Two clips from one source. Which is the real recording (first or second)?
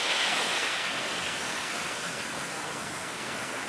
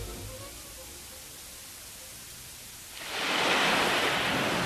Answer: second